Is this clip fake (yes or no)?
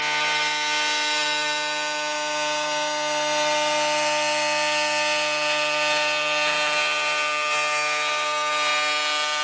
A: no